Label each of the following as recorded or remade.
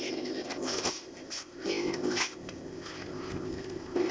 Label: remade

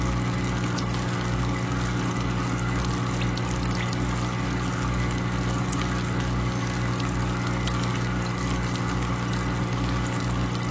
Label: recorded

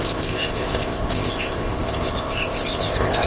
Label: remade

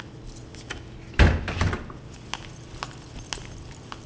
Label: recorded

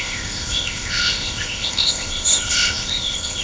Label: remade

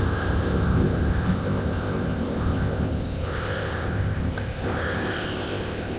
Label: remade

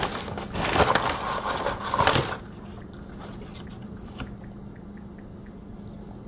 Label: recorded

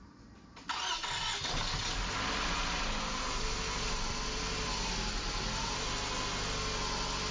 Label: recorded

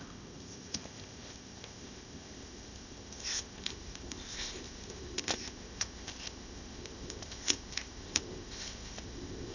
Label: remade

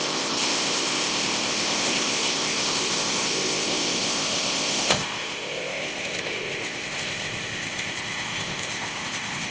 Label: remade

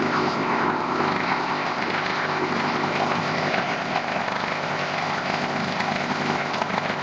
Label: remade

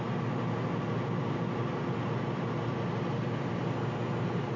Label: recorded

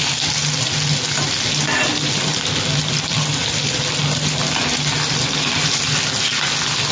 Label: recorded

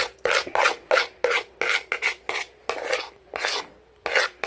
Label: recorded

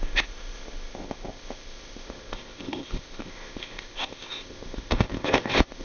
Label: remade